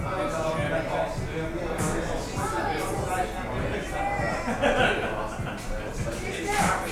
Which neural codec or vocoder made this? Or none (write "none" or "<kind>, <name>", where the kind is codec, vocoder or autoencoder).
none